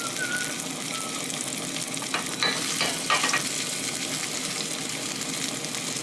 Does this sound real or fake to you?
real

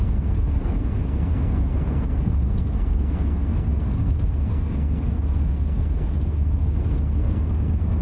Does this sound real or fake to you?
fake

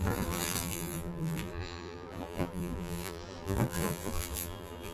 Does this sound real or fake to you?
fake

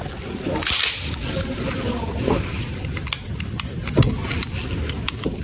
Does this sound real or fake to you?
real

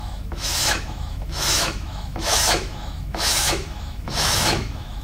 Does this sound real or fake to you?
fake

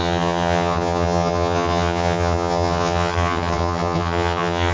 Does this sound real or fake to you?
fake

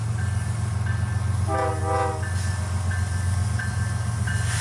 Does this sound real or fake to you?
real